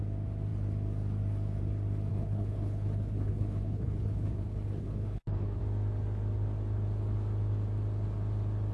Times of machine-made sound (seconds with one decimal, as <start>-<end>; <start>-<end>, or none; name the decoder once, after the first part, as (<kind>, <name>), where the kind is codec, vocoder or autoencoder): 2.1-5.6 (codec, HILCodec)